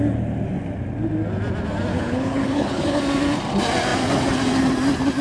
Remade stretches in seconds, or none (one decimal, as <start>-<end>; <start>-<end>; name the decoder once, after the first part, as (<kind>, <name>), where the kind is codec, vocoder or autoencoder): 1.9-3.0 (codec, HILCodec)